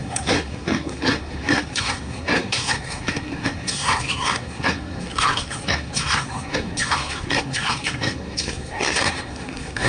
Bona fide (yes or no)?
no